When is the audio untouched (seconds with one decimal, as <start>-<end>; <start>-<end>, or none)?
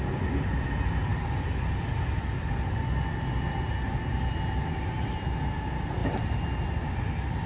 0.0-7.5